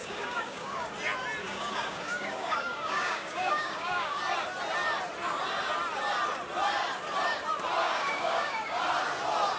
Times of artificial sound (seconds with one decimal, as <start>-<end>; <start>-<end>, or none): 0.0-0.9; 1.4-4.2; 7.8-8.8